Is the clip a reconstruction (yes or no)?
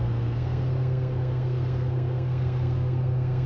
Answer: yes